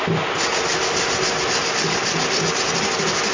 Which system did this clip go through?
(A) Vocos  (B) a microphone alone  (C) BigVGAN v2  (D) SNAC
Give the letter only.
B